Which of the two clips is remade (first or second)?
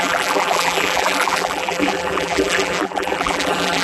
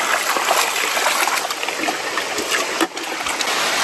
first